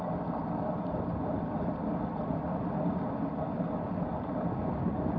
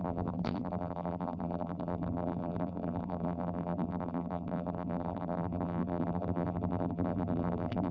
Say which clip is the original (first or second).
first